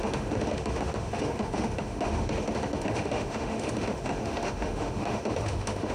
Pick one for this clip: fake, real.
fake